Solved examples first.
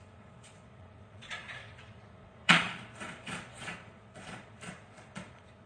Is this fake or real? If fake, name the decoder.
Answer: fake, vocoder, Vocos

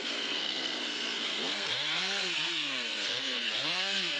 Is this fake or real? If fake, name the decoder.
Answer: fake, codec, SNAC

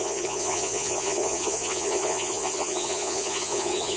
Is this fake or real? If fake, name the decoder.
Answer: fake, vocoder, Vocos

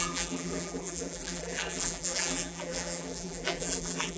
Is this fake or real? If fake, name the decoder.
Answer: fake, vocoder, BigVGAN v2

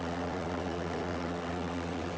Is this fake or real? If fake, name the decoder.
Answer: fake, vocoder, WaveNeXt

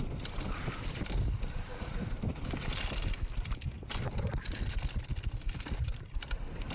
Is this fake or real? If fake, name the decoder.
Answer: real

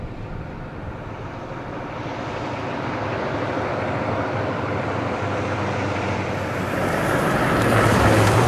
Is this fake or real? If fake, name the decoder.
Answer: fake, vocoder, BigVGAN v2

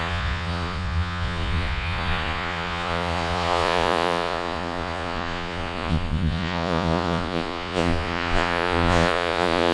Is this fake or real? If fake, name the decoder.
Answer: fake, vocoder, Vocos